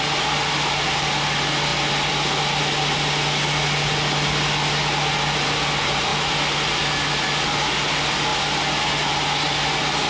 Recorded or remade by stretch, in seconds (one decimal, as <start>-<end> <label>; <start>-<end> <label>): 0.0-10.1 recorded